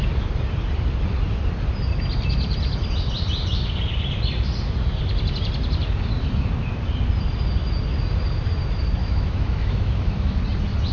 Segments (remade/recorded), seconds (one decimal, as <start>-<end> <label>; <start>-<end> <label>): 0.0-9.0 recorded; 9.0-10.4 remade; 10.4-10.9 recorded